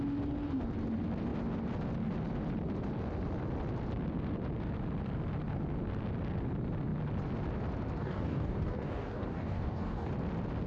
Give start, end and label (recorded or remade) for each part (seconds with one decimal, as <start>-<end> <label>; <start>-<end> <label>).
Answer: 0.0-8.0 recorded; 8.0-10.1 remade; 10.1-10.7 recorded